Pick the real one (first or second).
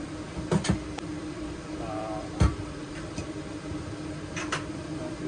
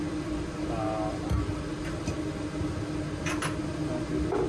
second